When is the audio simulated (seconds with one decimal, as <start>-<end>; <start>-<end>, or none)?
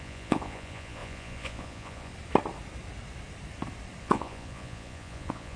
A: 0.0-2.1; 4.0-5.6